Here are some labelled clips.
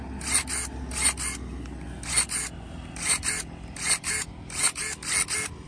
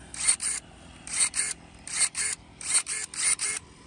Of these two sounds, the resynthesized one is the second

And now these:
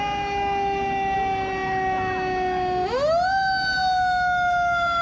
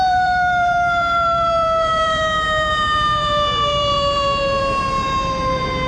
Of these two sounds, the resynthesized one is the second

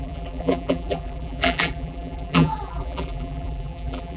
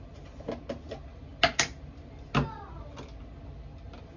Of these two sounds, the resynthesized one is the first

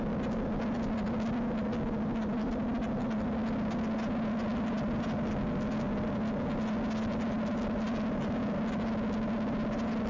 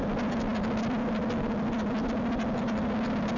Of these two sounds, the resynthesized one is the second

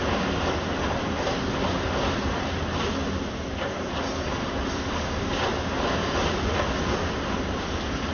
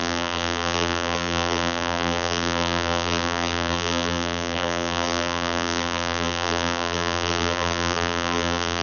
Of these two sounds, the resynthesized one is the second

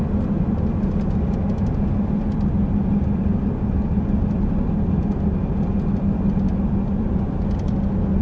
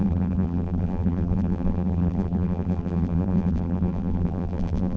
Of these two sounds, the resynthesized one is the second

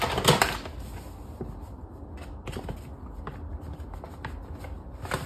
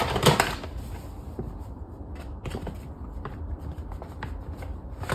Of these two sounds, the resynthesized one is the second